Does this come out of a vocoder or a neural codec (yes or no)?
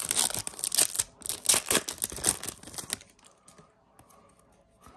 no